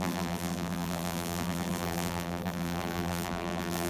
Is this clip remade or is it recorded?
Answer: remade